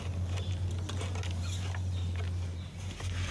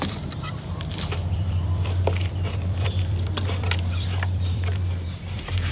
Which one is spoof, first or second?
second